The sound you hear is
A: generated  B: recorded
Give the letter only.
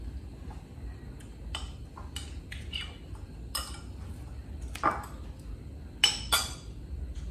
B